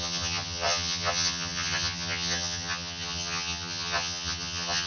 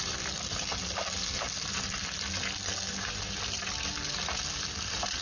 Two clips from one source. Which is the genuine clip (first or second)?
second